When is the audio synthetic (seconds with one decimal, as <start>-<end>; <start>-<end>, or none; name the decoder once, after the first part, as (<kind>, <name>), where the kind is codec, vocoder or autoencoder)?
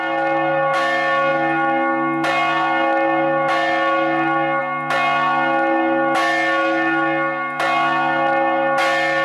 none